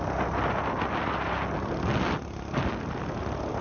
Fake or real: real